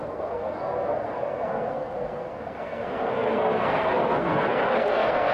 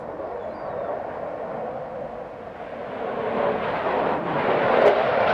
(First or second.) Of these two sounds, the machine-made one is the first